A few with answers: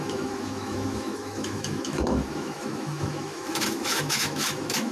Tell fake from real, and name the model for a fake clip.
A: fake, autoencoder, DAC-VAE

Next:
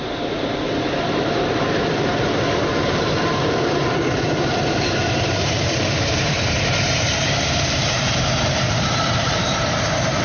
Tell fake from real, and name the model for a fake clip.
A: fake, vocoder, BigVGAN v2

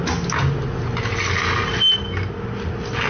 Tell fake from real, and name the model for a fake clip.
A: real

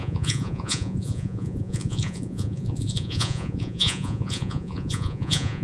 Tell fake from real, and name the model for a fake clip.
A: fake, vocoder, Vocos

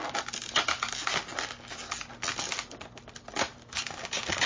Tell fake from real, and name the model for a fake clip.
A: real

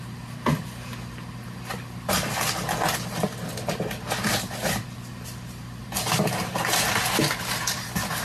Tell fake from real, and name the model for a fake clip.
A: real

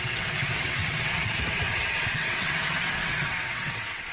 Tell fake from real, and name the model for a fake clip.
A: fake, vocoder, WaveNeXt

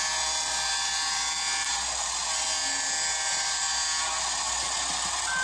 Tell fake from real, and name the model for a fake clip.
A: real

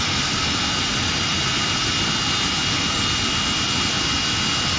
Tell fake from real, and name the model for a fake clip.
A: real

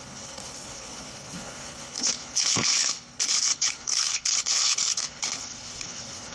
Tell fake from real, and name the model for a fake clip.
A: fake, codec, HILCodec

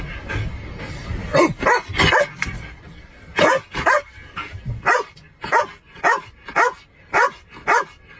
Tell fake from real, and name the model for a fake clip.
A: real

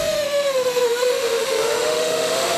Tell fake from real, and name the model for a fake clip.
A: fake, autoencoder, DAC-VAE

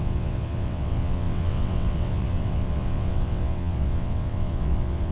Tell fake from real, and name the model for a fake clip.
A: fake, vocoder, WaveNeXt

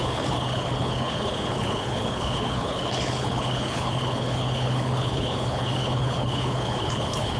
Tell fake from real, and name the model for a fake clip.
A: fake, codec, HILCodec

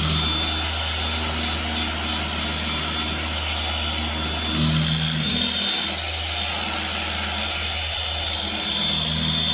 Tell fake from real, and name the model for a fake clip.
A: real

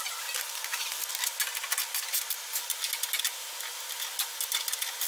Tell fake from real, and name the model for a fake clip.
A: real